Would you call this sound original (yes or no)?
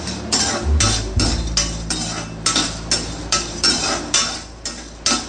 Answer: yes